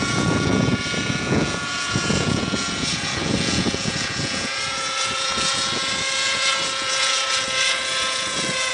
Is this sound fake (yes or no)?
yes